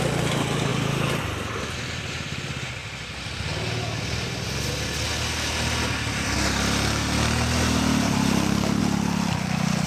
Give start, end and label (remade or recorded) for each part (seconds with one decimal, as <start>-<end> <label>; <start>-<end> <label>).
0.0-9.9 recorded